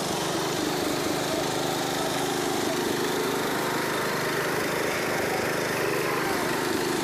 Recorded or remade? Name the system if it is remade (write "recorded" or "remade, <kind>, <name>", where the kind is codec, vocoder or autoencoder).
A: remade, vocoder, BigVGAN v2